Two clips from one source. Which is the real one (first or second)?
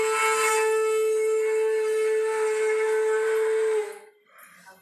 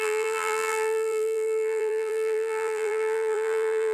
first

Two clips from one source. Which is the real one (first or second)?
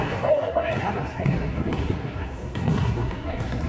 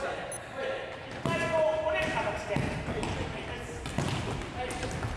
second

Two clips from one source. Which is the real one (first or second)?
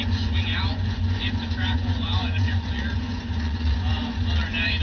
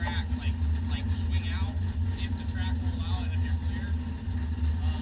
second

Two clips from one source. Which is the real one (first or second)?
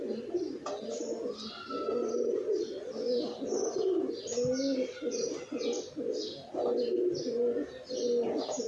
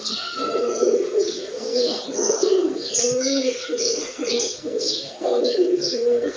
first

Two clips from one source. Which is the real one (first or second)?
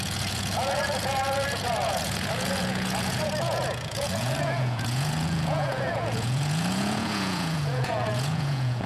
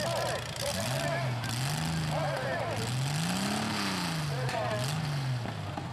second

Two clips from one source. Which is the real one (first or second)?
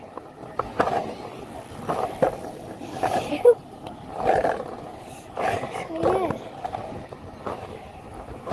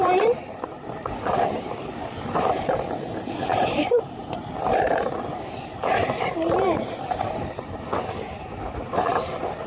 first